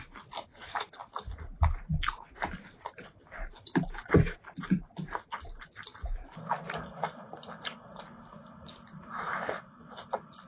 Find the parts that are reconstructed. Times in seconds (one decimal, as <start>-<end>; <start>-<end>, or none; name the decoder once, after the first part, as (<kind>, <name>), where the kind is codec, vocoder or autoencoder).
none